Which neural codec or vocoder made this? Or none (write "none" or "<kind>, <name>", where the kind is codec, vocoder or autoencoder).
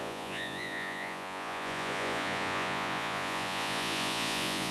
vocoder, Vocos